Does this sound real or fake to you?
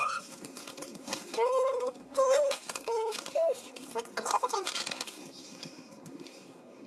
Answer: fake